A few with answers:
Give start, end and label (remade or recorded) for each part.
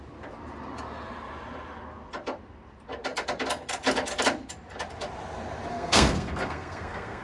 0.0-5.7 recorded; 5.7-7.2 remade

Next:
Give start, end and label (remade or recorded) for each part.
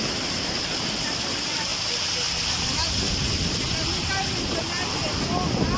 0.0-5.8 recorded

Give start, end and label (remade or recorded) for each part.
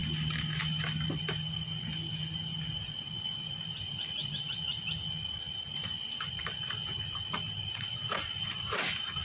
0.0-9.2 recorded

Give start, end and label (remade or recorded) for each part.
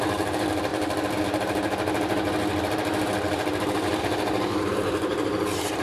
0.0-5.8 recorded